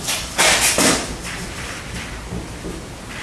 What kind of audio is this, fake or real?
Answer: real